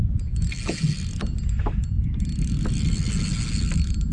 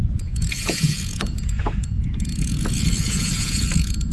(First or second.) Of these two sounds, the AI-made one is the second